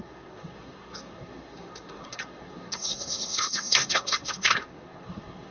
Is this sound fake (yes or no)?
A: yes